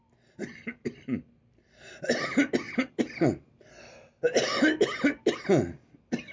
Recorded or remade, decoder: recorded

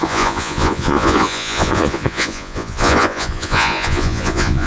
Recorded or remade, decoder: remade, vocoder, Vocos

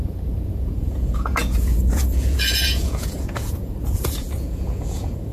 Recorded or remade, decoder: remade, vocoder, Vocos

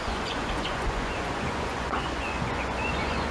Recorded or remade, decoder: remade, vocoder, Vocos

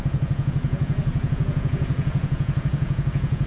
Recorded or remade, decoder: remade, vocoder, Vocos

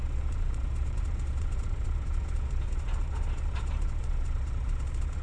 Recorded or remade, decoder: remade, vocoder, Vocos